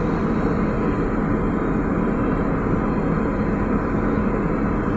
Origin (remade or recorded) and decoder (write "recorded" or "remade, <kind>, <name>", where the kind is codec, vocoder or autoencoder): recorded